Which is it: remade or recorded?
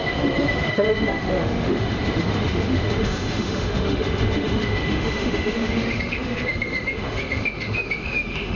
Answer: remade